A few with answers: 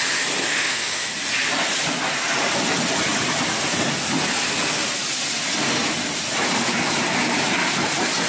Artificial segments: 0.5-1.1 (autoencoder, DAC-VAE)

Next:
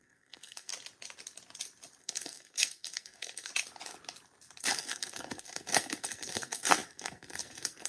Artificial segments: 0.0-0.7 (codec, SNAC); 2.0-3.5; 4.6-7.9

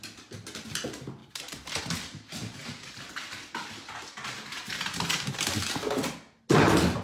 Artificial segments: 1.2-1.8 (vocoder, BigVGAN v2)

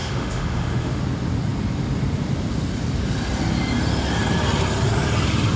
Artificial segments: 0.0-1.0 (autoencoder, DAC-VAE)

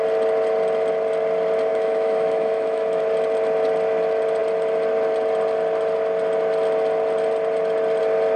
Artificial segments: 1.7-3.0 (autoencoder, DAC-VAE)

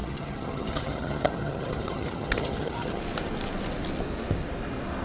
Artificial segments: 0.0-3.0 (vocoder, HiFi-GAN)

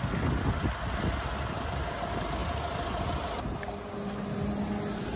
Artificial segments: none

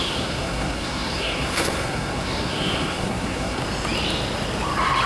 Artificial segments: 0.0-3.6 (codec, SNAC)